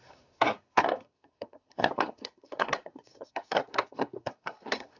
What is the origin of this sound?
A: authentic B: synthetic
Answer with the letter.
B